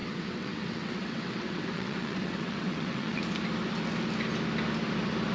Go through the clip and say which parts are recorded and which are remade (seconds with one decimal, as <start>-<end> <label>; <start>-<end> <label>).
0.0-3.2 remade; 3.2-5.3 recorded